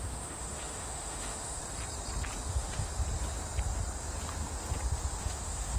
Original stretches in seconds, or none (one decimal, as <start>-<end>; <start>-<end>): 1.6-2.5; 2.9-5.2